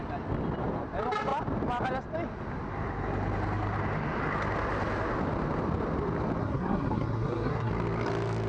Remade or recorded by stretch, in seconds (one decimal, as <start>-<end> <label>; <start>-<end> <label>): 0.0-6.4 recorded; 6.4-7.7 remade; 7.7-8.5 recorded

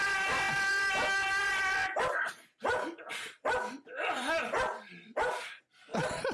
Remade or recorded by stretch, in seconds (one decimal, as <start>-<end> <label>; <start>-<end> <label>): 0.0-6.3 recorded

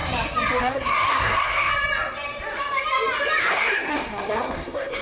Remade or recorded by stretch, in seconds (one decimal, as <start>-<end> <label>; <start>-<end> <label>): 0.0-0.6 recorded; 0.6-1.7 remade; 1.7-3.4 recorded; 3.4-5.0 remade

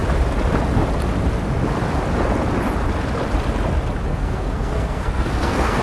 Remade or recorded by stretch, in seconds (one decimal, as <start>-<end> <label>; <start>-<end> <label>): 0.0-4.1 recorded; 4.1-5.8 remade

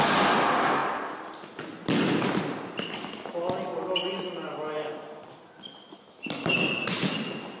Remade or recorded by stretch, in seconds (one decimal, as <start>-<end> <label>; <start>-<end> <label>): 0.0-7.6 recorded

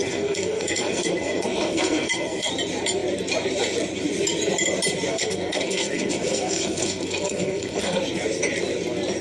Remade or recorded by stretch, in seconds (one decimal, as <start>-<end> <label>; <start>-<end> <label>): 0.0-2.5 remade; 2.5-5.1 recorded; 5.1-8.0 remade; 8.0-9.2 recorded

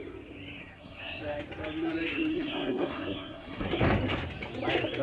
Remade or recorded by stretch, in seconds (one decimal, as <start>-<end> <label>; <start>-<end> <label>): 0.0-0.6 recorded; 0.6-1.2 remade; 1.2-2.3 recorded; 2.3-3.7 remade; 3.7-5.0 recorded